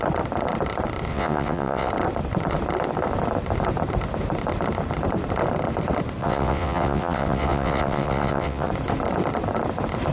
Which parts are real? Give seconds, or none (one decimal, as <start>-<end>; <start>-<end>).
0.0-1.1; 1.9-6.2; 8.7-10.1